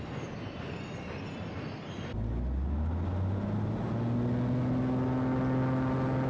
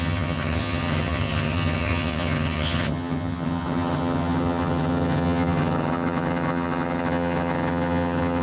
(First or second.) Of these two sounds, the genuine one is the first